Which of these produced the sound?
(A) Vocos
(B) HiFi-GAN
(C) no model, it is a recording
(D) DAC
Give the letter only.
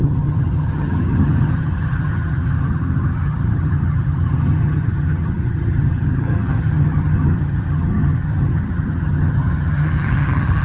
B